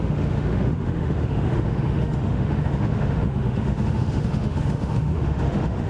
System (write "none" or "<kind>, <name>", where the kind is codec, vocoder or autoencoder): autoencoder, DAC-VAE